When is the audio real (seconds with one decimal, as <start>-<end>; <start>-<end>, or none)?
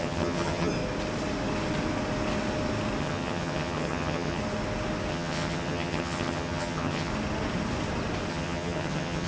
0.7-3.0; 4.4-5.1; 7.1-8.3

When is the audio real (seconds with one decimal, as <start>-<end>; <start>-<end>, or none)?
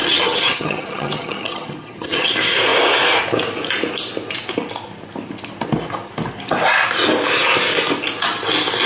2.3-8.9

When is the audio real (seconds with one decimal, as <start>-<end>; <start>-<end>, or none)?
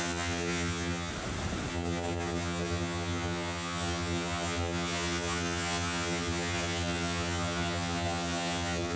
1.1-1.7